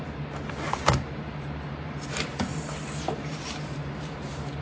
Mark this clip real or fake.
fake